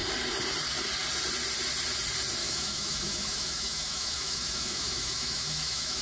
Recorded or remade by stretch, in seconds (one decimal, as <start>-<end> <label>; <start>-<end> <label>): 0.0-2.4 recorded; 2.4-6.0 remade